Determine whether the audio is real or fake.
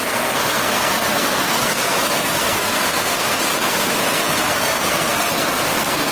fake